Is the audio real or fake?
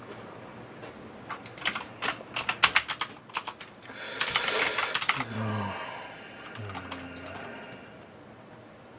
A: real